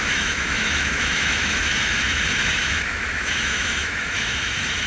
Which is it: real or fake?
fake